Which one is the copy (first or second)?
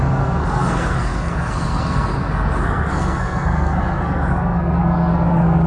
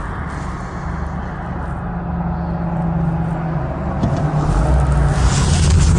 first